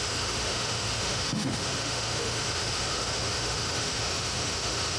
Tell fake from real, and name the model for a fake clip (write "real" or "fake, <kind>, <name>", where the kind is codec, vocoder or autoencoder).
fake, autoencoder, DAC-VAE